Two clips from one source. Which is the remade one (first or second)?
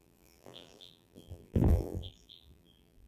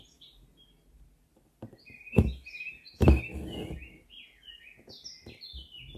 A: first